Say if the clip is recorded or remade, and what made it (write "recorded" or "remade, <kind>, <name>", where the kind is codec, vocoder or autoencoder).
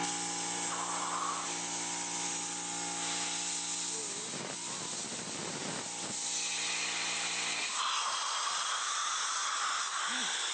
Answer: recorded